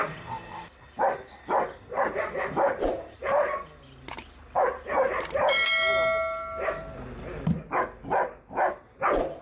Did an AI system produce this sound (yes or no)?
no